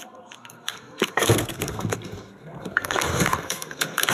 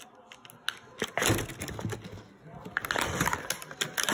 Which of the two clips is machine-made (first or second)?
first